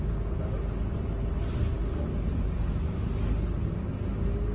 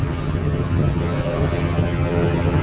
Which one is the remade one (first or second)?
second